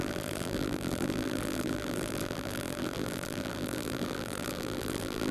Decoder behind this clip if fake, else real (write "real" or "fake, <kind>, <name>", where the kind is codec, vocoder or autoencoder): fake, vocoder, BigVGAN v2